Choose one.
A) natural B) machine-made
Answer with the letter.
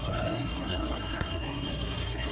B